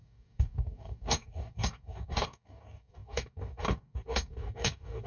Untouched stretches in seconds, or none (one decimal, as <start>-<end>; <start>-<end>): none